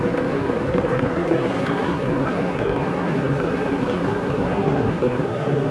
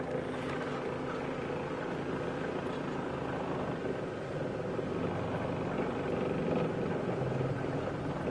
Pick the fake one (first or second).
first